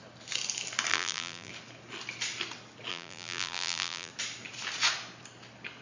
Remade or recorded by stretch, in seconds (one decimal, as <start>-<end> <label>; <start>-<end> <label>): 0.0-0.9 recorded; 0.9-1.5 remade; 1.5-2.9 recorded; 2.9-4.1 remade; 4.1-5.8 recorded